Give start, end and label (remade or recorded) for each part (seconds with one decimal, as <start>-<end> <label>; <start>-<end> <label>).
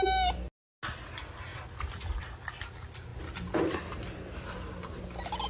0.0-5.5 recorded